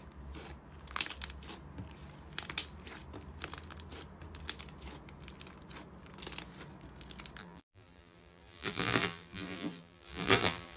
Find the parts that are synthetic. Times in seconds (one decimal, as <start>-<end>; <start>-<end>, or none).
7.4-10.8